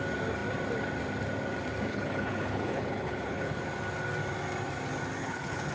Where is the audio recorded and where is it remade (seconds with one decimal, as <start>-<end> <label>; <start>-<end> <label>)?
0.0-1.9 recorded; 1.9-3.6 remade; 3.6-5.2 recorded; 5.2-5.7 remade